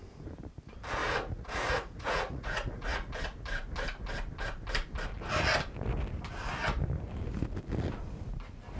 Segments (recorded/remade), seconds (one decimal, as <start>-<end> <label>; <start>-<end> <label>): 0.0-1.0 recorded; 1.0-3.1 remade; 3.1-8.8 recorded

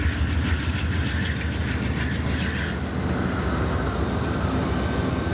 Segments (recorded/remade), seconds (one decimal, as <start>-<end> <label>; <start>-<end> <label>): 0.0-5.3 recorded

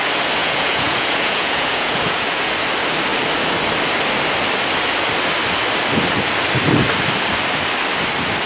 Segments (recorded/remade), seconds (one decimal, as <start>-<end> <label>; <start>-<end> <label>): 0.0-0.4 recorded; 0.4-2.5 remade; 2.5-8.5 recorded

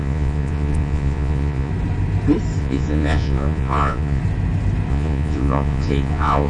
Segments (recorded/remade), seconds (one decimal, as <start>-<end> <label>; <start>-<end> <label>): 0.0-1.7 remade; 1.7-2.6 recorded; 2.6-4.2 remade; 4.2-4.9 recorded; 4.9-6.5 remade